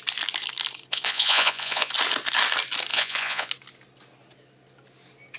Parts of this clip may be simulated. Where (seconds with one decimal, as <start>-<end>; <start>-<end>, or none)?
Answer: 0.9-1.9; 2.9-3.5